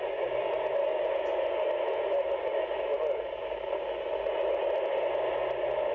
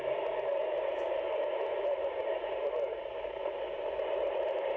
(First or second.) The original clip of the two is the first